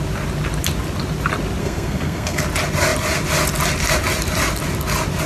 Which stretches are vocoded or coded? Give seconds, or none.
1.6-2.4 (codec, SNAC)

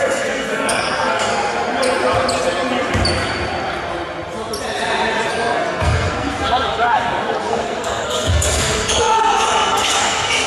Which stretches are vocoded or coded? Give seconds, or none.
0.0-1.3 (codec, SNAC); 5.3-10.5

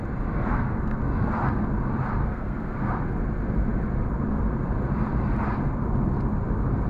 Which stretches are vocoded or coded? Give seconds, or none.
0.4-1.0 (codec, SNAC); 2.2-2.9